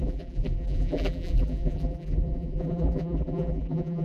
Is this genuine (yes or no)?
no